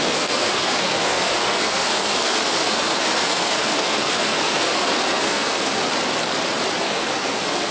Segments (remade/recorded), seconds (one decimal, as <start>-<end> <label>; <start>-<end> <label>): 0.0-5.8 remade; 5.8-6.8 recorded; 6.8-7.7 remade